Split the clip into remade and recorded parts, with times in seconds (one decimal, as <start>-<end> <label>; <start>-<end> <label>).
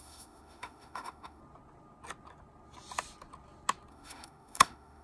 0.0-1.4 remade; 1.4-3.9 recorded; 3.9-5.0 remade